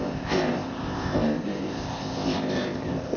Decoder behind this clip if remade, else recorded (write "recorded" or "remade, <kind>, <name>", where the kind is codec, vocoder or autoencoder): remade, codec, ZipCodec